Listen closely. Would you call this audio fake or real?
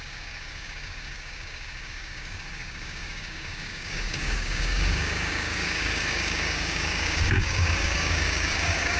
fake